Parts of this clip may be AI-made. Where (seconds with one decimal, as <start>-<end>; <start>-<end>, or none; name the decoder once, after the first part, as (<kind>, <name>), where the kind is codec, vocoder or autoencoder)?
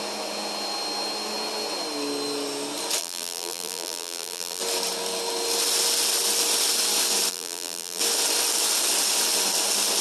3.0-4.6 (vocoder, BigVGAN v2); 7.3-8.0